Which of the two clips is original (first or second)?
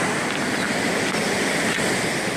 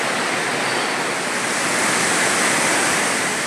second